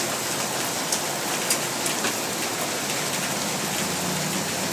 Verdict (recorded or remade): recorded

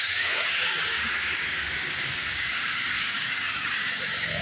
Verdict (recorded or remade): remade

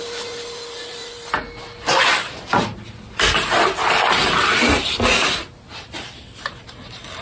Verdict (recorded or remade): recorded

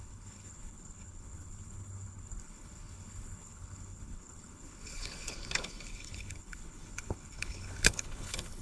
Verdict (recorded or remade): remade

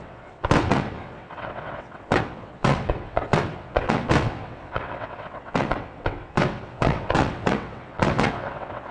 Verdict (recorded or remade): remade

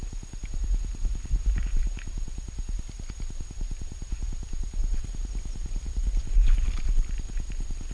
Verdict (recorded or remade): recorded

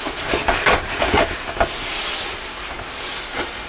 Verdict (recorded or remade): recorded